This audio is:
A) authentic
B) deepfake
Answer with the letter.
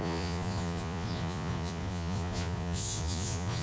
B